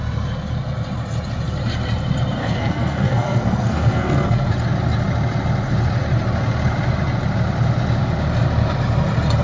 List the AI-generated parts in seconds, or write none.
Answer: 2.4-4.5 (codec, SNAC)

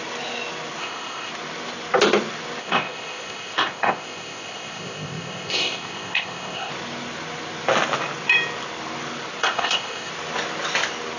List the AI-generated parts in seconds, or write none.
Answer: 0.8-1.3 (codec, ZipCodec); 2.6-6.7; 9.4-10.1